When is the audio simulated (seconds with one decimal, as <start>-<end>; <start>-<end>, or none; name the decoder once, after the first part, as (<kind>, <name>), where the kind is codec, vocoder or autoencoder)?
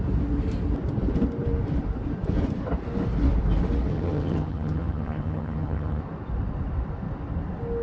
3.9-6.0 (vocoder, HiFi-GAN)